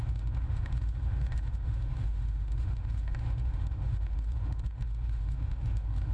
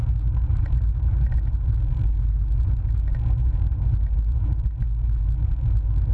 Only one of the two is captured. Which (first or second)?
second